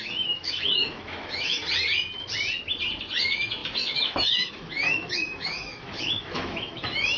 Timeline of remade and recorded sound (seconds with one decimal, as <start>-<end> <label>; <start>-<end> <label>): 0.0-1.6 remade; 1.6-3.0 recorded; 3.0-7.2 remade